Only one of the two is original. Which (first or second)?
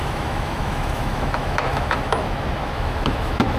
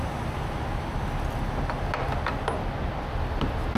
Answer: second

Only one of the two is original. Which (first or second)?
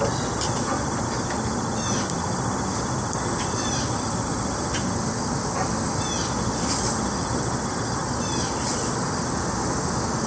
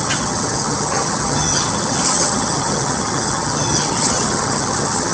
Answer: first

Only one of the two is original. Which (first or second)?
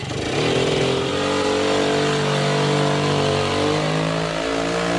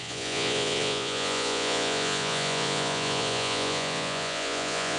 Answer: first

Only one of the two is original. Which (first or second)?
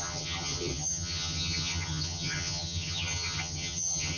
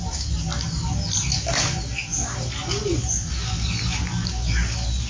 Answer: second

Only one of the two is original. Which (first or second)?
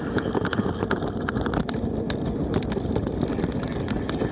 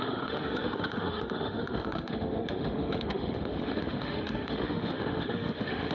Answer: first